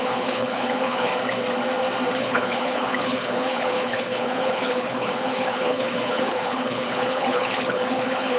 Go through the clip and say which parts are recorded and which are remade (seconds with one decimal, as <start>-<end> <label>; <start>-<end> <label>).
0.0-1.1 remade; 1.1-2.2 recorded; 2.2-8.4 remade